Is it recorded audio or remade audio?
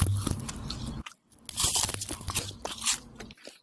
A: remade